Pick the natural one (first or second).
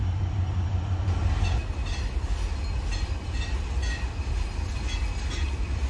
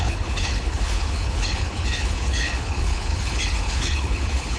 first